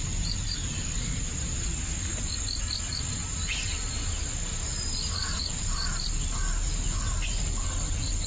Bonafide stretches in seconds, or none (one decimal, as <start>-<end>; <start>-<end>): 0.0-5.3; 6.1-8.3